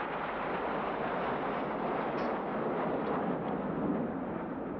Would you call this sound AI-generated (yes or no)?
no